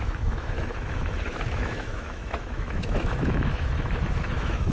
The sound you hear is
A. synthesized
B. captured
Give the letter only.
A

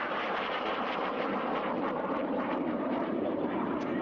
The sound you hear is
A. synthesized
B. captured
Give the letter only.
A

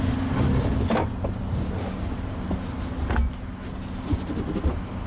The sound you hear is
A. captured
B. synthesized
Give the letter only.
A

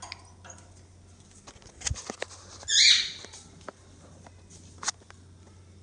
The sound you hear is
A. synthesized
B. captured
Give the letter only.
B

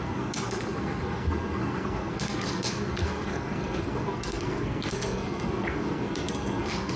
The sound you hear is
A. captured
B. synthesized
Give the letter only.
B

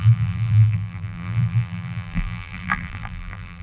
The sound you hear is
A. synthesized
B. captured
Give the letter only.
A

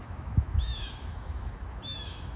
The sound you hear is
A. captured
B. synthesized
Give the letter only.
B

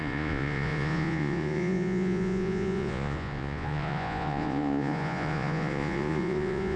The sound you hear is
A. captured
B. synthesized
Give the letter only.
B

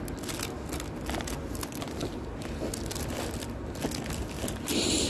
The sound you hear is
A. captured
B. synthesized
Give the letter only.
A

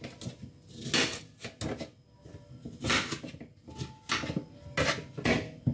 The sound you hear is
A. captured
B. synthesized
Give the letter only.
A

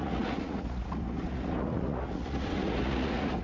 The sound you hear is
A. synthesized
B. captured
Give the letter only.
A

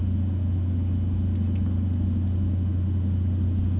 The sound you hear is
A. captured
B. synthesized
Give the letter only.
A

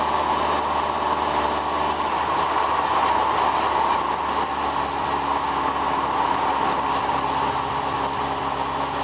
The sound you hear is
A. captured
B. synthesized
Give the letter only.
A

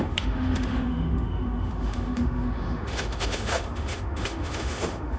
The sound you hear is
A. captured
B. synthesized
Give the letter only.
B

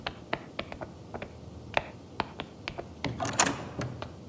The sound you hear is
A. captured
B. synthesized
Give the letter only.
A